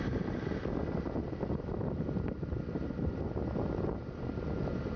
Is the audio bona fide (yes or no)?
yes